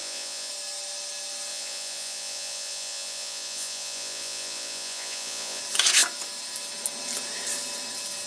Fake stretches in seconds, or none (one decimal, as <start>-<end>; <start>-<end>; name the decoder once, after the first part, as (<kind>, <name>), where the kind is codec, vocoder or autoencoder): 0.0-0.5 (vocoder, Vocos); 1.5-5.6